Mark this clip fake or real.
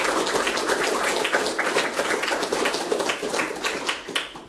real